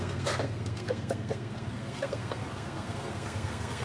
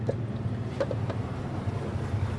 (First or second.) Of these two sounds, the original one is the second